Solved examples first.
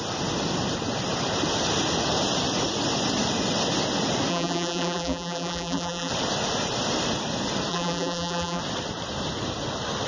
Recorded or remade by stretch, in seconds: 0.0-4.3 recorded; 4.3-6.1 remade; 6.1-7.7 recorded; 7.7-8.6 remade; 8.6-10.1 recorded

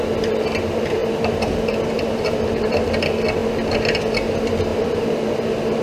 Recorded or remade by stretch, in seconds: 0.0-1.0 recorded; 1.0-2.9 remade; 2.9-4.7 recorded; 4.7-5.8 remade

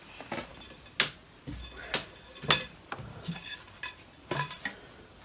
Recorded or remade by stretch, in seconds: 0.0-3.1 recorded; 3.1-3.6 remade; 3.6-5.2 recorded